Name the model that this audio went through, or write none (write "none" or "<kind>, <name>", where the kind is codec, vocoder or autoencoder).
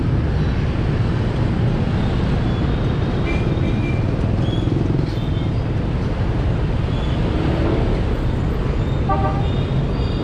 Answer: none